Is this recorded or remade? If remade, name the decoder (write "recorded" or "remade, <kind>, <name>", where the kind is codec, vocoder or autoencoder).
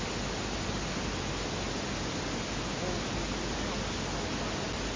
recorded